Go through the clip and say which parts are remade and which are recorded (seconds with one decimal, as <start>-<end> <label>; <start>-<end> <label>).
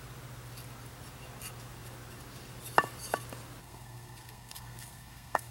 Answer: 0.0-3.6 recorded; 3.6-5.5 remade